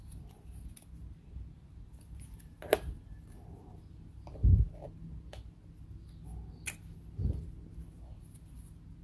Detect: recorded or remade recorded